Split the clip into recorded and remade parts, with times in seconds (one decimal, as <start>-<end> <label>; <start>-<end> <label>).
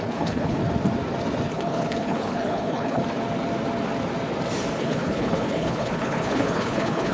0.0-0.6 remade; 0.6-1.5 recorded; 1.5-3.0 remade; 3.0-4.8 recorded; 4.8-7.1 remade